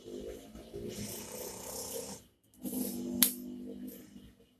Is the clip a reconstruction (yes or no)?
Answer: no